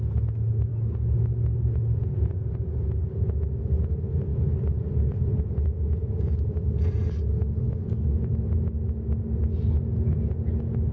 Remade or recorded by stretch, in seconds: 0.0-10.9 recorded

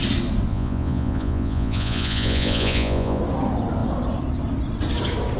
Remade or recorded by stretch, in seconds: 0.0-0.5 recorded; 0.5-3.2 remade; 3.2-5.4 recorded

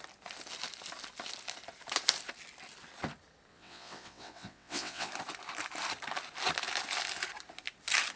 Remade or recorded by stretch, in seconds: 0.0-3.5 recorded; 3.5-5.1 remade; 5.1-8.2 recorded

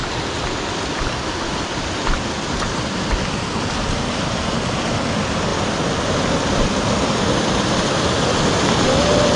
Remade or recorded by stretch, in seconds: 0.0-9.4 recorded

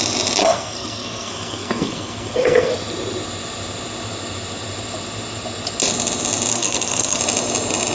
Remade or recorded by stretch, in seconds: 0.0-0.4 recorded; 0.4-2.7 remade; 2.7-6.5 recorded; 6.5-7.2 remade; 7.2-7.9 recorded

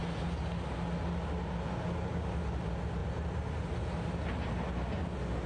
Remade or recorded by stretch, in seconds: 0.0-5.5 recorded

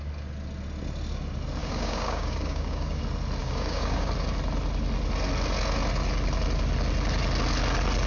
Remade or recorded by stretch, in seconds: 0.0-1.6 recorded; 1.6-3.0 remade; 3.0-3.4 recorded; 3.4-4.1 remade; 4.1-8.1 recorded

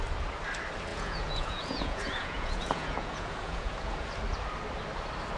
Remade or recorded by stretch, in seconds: 0.0-0.9 recorded; 0.9-4.1 remade; 4.1-5.4 recorded